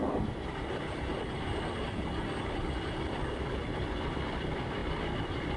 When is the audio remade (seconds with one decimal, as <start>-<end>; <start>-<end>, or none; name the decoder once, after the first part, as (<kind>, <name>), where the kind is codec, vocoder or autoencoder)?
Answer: none